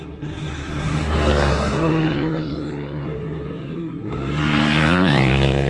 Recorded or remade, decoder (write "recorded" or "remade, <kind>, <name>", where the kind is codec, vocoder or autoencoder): remade, codec, SNAC